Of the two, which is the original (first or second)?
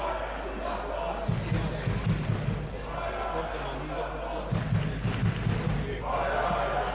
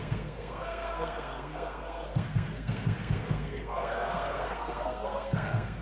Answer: first